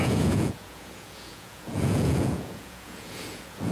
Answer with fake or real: fake